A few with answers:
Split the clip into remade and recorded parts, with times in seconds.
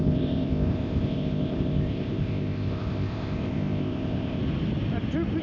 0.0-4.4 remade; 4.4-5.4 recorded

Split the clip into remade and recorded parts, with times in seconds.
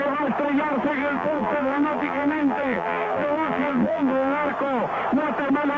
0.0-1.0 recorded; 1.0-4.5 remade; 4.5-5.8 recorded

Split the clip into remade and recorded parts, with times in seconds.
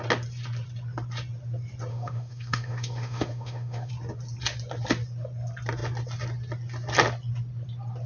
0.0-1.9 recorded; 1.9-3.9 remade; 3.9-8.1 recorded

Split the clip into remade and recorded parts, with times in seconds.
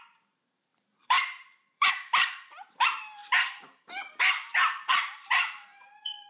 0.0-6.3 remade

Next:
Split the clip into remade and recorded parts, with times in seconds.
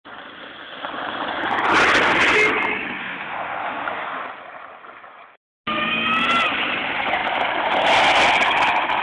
0.0-3.0 recorded; 3.0-4.2 remade; 4.2-9.0 recorded